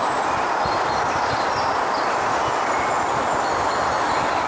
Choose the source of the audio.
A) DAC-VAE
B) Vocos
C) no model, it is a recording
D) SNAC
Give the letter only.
C